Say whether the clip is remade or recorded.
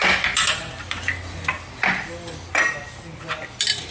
recorded